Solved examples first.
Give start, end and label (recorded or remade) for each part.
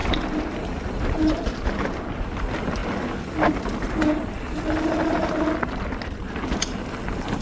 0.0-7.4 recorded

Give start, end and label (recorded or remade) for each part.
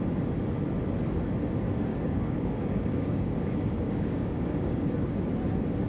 0.0-1.9 recorded; 1.9-4.9 remade; 4.9-5.9 recorded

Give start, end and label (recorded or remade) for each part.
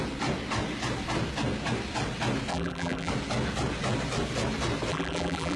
0.0-2.5 recorded; 2.5-3.1 remade; 3.1-4.9 recorded; 4.9-5.6 remade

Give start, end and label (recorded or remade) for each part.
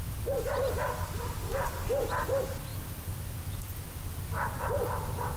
0.0-5.4 recorded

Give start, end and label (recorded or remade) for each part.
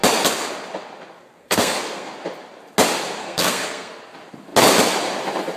0.0-1.2 recorded; 1.2-2.1 remade; 2.1-3.2 recorded; 3.2-3.9 remade; 3.9-5.6 recorded